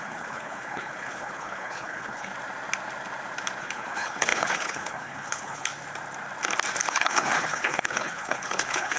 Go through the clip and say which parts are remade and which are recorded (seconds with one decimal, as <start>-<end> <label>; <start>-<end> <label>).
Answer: 0.0-2.3 remade; 2.3-3.6 recorded; 3.6-5.7 remade; 5.7-6.9 recorded; 6.9-9.0 remade